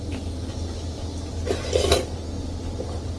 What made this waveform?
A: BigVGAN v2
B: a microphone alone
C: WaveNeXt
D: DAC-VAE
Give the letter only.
B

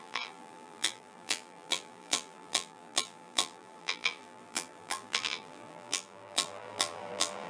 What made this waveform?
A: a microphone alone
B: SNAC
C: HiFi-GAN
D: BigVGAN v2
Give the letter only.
D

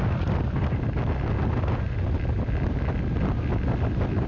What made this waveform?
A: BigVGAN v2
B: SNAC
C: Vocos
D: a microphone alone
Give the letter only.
D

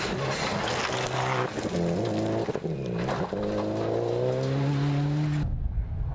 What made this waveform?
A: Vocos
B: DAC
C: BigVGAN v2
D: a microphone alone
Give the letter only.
D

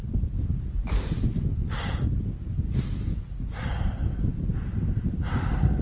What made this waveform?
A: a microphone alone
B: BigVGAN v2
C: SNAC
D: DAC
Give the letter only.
A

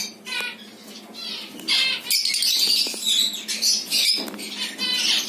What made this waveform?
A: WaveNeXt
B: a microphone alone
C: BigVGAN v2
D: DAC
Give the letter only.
B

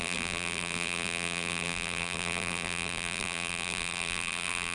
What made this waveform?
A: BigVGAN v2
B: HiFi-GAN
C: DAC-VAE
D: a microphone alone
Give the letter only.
A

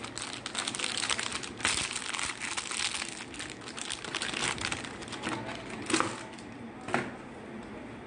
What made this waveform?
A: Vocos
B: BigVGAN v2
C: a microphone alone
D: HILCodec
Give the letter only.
C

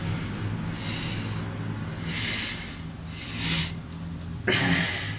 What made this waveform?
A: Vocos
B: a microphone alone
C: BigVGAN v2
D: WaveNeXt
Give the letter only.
B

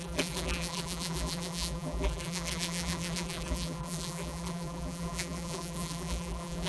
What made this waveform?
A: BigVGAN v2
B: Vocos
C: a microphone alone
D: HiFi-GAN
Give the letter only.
A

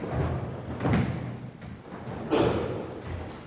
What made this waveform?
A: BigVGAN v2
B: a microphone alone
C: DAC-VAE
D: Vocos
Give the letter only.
B